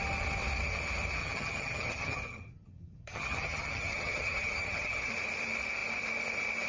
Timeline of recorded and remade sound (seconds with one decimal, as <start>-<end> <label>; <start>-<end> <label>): 0.0-1.2 recorded; 1.2-5.1 remade; 5.1-6.7 recorded